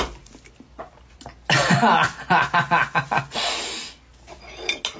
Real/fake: real